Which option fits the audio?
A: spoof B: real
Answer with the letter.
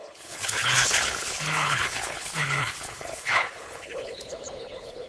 A